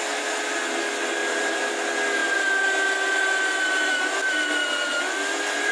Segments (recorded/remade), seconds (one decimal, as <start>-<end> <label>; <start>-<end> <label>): 0.0-1.2 recorded; 1.2-1.7 remade; 1.7-5.7 recorded